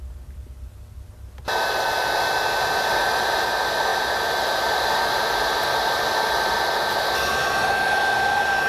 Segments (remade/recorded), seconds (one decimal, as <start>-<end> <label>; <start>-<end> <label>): 0.0-8.7 remade